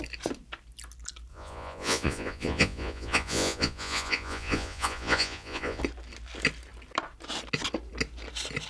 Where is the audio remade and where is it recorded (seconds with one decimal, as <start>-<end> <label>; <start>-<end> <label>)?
0.0-1.3 recorded; 1.3-5.8 remade; 5.8-8.7 recorded